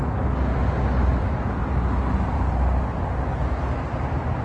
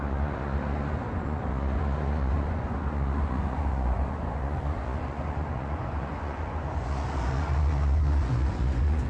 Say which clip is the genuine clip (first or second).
first